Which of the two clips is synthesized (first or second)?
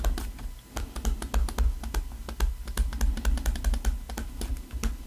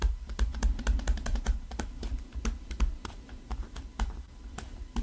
second